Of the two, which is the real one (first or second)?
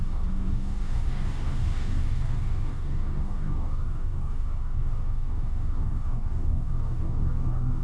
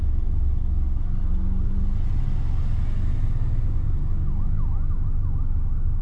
second